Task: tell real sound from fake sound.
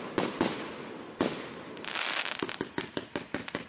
real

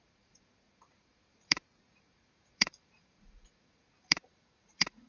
fake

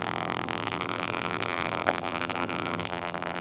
fake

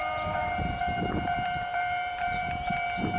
fake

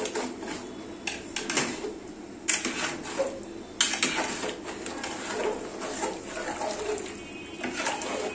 real